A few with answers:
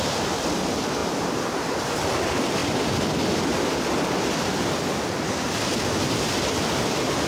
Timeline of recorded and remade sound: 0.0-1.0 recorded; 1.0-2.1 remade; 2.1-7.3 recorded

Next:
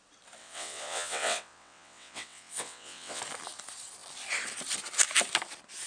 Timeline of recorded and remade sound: 0.0-0.4 recorded; 0.4-3.2 remade; 3.2-5.9 recorded

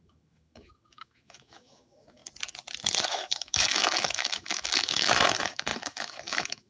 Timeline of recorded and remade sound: 0.0-2.2 remade; 2.2-3.1 recorded; 3.1-6.7 remade

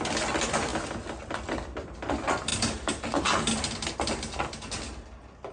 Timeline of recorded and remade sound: 0.0-5.5 recorded

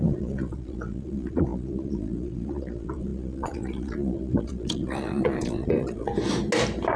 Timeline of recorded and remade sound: 0.0-6.1 remade; 6.1-7.0 recorded

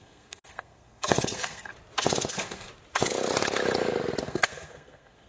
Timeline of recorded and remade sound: 0.0-1.7 remade; 1.7-2.3 recorded; 2.3-2.7 remade; 2.7-4.2 recorded; 4.2-5.3 remade

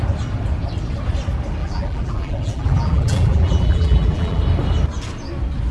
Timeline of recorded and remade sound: 0.0-1.6 recorded; 1.6-4.4 remade; 4.4-5.7 recorded

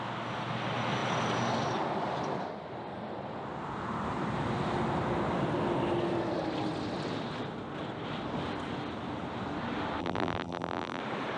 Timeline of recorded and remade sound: 0.0-10.0 recorded; 10.0-11.0 remade; 11.0-11.4 recorded